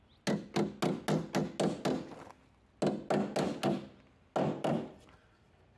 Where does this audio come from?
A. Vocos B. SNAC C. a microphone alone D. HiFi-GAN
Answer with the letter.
C